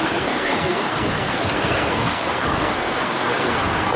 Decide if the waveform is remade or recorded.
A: remade